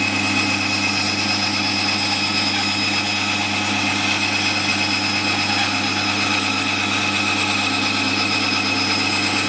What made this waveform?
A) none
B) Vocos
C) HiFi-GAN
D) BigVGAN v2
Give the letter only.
A